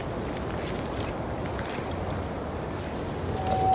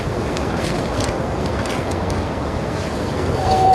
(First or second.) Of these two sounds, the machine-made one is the second